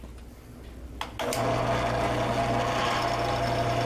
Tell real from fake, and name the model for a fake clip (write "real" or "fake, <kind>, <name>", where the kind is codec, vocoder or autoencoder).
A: real